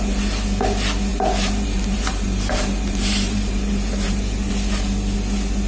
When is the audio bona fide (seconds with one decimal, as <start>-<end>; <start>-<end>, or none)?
0.0-1.1; 4.5-5.7